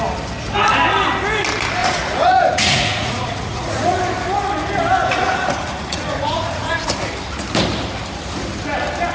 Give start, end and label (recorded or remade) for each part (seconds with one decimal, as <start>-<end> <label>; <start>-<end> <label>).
0.0-1.8 recorded; 1.8-4.0 remade; 4.0-5.0 recorded; 5.0-6.9 remade; 6.9-9.1 recorded